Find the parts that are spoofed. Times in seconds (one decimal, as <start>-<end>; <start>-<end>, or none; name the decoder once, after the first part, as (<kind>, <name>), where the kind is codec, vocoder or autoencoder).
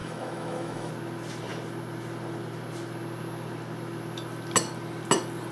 0.0-0.9 (autoencoder, DAC-VAE)